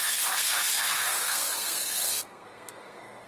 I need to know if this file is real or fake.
fake